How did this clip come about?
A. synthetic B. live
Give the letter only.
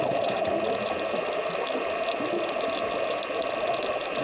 B